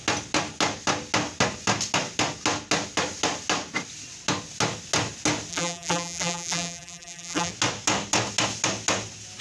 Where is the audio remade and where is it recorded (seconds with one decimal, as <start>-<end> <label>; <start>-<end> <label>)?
0.0-5.5 recorded; 5.5-7.5 remade; 7.5-9.4 recorded